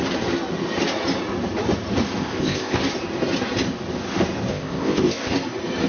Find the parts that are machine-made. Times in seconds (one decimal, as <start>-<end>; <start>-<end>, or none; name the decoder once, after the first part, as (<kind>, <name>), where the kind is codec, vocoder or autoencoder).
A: 2.2-2.8 (codec, ZipCodec); 4.5-5.3

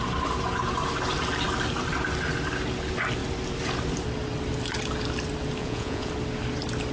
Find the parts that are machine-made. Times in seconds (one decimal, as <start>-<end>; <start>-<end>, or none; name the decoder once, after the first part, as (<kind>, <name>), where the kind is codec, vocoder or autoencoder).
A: 5.6-6.1 (vocoder, Vocos)

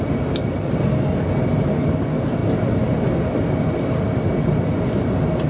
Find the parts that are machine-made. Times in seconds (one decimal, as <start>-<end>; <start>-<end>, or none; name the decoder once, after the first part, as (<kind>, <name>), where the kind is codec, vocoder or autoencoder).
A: none

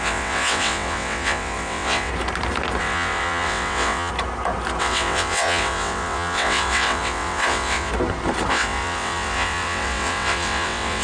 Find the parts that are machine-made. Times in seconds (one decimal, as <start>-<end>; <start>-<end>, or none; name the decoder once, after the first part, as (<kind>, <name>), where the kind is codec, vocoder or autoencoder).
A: 0.0-2.1 (vocoder, WaveNeXt); 2.8-4.1; 4.8-7.9; 8.5-11.0

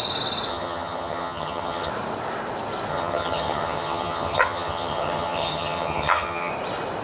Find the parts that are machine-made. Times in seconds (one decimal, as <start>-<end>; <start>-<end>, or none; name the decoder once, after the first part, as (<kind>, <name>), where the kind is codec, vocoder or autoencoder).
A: 0.5-1.9 (vocoder, HiFi-GAN); 2.9-6.5